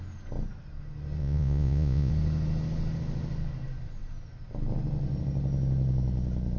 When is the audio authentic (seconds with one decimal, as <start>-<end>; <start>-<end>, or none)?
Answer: 0.0-1.2; 2.1-6.6